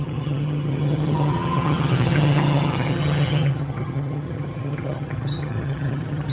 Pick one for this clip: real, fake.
fake